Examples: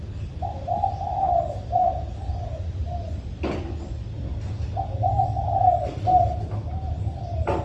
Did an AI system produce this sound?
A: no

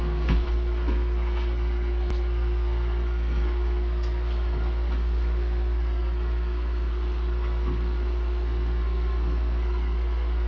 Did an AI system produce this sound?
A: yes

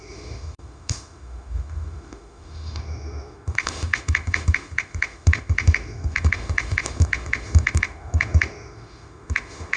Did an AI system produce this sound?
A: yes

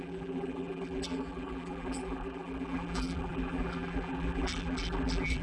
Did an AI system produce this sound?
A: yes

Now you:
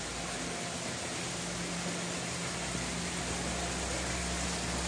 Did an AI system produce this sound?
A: no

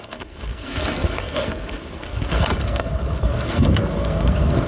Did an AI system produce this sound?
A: yes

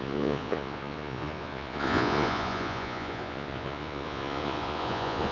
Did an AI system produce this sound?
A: yes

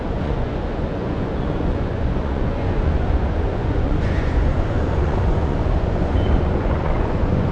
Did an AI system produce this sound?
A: yes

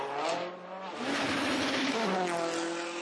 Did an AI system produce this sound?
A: no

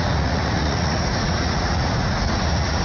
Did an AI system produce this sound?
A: yes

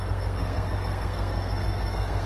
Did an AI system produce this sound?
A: yes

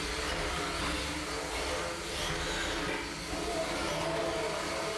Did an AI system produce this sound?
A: no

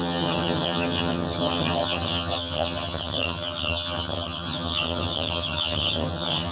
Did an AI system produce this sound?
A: yes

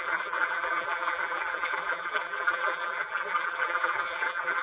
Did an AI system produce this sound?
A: yes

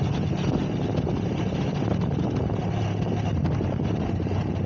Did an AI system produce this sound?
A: no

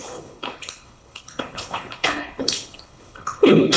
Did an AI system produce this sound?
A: yes